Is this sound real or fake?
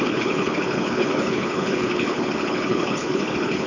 fake